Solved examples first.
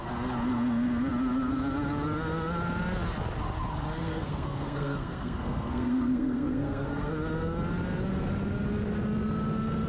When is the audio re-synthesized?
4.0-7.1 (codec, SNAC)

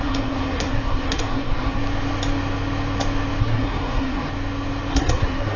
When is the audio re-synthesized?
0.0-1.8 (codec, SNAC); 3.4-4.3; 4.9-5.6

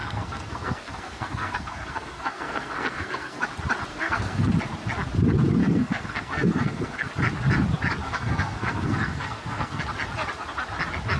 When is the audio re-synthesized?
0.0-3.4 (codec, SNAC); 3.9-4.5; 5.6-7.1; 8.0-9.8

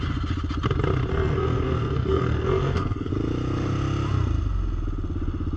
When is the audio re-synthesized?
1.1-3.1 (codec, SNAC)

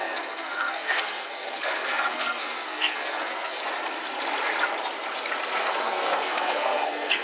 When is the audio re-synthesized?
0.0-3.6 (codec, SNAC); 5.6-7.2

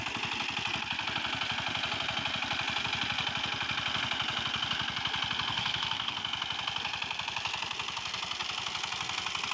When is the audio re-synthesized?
5.5-6.2 (codec, SNAC)

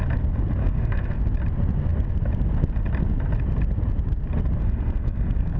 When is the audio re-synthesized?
0.6-1.2 (codec, SNAC); 4.6-5.6

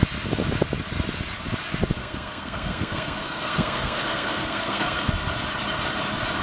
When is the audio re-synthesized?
2.0-5.1 (codec, SNAC)